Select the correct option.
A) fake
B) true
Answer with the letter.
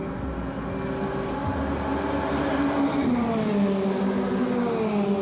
B